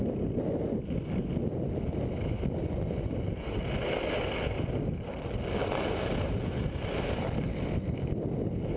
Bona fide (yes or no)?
yes